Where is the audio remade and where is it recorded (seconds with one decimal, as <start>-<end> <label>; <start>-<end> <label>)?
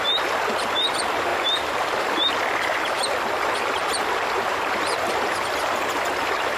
0.0-1.3 recorded; 1.3-2.3 remade; 2.3-6.6 recorded